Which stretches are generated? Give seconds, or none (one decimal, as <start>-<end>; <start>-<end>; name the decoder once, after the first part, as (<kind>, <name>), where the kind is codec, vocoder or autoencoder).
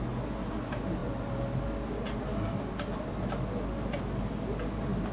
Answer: none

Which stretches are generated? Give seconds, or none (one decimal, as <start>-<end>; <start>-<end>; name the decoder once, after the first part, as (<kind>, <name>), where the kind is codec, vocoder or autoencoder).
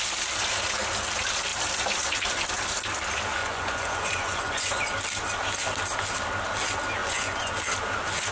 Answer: 3.4-4.8 (vocoder, Vocos); 7.0-7.5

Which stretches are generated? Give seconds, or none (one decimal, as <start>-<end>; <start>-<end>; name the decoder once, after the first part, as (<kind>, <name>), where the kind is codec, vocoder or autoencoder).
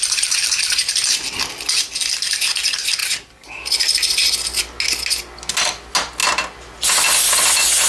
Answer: none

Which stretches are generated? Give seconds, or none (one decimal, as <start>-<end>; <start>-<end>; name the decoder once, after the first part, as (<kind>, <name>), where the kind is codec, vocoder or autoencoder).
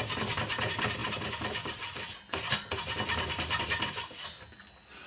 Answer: none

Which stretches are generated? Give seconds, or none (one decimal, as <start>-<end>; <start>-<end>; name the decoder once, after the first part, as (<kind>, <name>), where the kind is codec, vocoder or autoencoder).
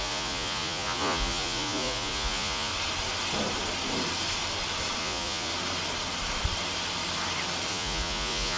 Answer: 0.0-2.7 (vocoder, Vocos); 5.0-5.5; 7.7-8.6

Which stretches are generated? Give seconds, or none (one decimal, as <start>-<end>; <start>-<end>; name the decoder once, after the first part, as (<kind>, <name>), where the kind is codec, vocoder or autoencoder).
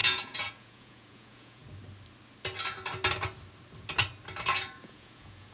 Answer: 0.0-1.6 (vocoder, Vocos); 4.8-5.5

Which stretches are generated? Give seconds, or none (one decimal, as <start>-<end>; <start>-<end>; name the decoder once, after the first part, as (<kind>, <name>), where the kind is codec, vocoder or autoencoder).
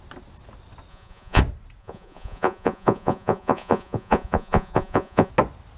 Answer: 0.9-1.4 (vocoder, Vocos); 1.8-5.3